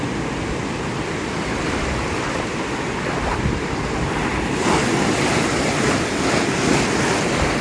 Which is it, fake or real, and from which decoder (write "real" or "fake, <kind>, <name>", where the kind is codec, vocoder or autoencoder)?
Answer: real